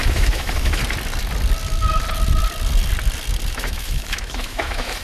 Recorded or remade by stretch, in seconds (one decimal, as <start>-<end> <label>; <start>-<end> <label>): 0.0-0.8 remade; 0.8-3.5 recorded; 3.5-5.0 remade